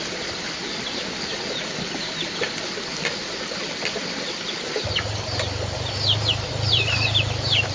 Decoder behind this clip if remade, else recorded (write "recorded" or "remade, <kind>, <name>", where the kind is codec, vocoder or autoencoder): remade, vocoder, BigVGAN v2